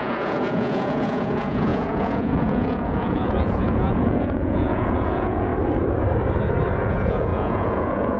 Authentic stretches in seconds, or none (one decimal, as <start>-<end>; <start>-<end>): 5.5-6.8

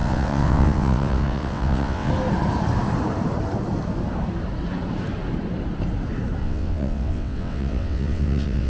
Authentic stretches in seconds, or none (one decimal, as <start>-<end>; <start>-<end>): 2.1-6.4

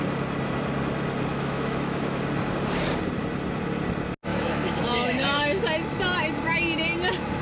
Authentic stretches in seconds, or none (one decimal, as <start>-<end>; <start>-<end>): 0.0-1.3; 2.2-4.3; 5.6-7.4